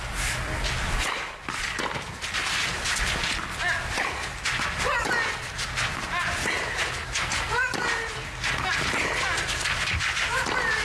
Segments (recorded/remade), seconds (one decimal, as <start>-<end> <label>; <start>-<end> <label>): 0.0-7.0 recorded; 7.0-7.5 remade; 7.5-10.8 recorded